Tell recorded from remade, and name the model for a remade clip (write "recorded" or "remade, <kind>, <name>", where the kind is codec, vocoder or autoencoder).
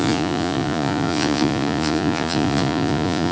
remade, vocoder, Vocos